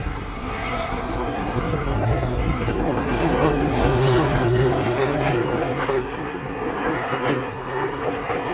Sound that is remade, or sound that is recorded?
remade